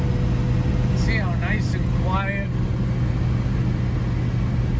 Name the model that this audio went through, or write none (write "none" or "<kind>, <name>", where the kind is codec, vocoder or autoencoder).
none